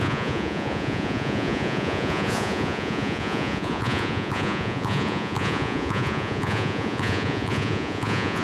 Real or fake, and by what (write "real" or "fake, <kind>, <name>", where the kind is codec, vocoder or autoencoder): fake, vocoder, Vocos